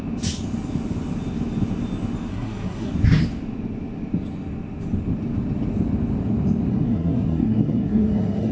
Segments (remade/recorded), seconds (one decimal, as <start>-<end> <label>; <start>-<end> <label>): 0.0-2.3 recorded; 2.3-2.9 remade; 2.9-6.7 recorded; 6.7-8.5 remade